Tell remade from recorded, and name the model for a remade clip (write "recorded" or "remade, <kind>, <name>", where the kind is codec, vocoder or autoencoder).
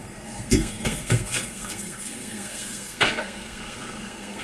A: remade, codec, SNAC